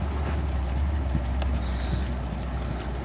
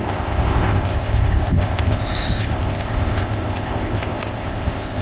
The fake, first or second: second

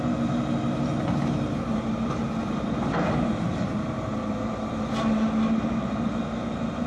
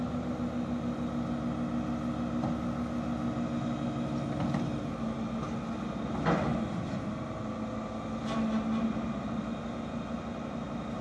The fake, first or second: first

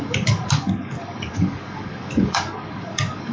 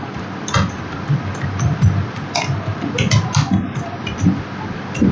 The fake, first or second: first